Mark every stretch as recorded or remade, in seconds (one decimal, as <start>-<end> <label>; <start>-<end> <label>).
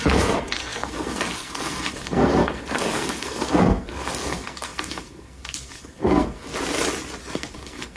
0.0-6.5 remade; 6.5-7.2 recorded; 7.2-8.0 remade